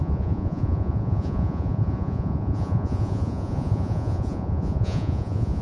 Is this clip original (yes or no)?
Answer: no